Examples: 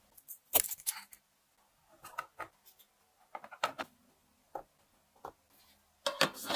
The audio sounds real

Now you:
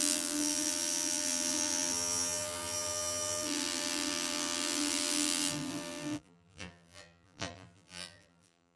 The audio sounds fake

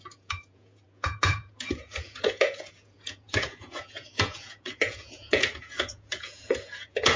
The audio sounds fake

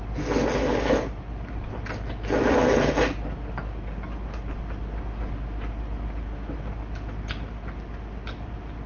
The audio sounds real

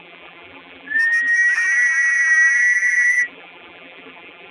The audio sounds fake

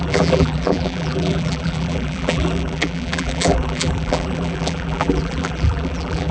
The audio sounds fake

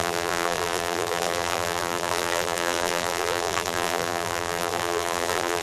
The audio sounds fake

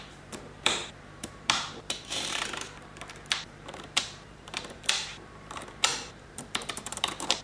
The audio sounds fake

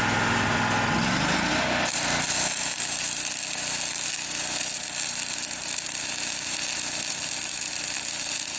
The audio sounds real